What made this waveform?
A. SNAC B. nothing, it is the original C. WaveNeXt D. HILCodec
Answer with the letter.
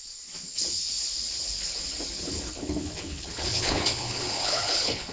D